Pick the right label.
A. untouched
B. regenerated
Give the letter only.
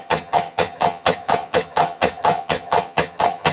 B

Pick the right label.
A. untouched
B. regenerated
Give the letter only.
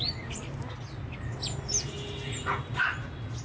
A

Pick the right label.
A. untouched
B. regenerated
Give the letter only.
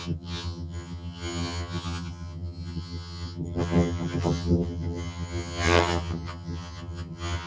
B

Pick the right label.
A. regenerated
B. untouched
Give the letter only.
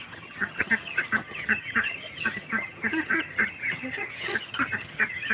A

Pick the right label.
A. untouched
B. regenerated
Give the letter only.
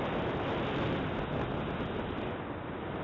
A